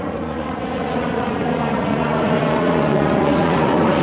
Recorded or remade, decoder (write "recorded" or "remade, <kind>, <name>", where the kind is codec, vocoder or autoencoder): remade, vocoder, Vocos